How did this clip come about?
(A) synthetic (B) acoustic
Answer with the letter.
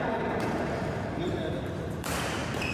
A